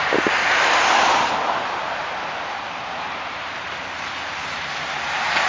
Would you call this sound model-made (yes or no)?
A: no